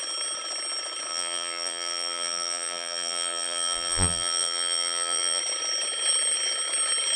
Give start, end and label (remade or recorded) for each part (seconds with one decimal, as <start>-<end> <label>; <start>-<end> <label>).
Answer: 0.0-1.1 recorded; 1.1-5.4 remade; 5.4-7.2 recorded